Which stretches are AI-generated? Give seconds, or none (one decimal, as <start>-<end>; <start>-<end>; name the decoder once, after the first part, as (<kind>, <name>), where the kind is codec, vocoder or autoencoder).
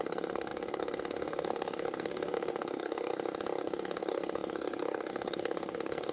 0.0-3.1 (codec, SNAC); 3.6-6.1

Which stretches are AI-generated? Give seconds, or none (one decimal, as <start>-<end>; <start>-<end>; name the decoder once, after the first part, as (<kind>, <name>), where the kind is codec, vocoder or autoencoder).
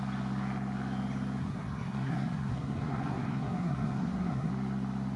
1.4-4.5 (codec, SNAC)